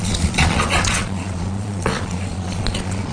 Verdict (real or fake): fake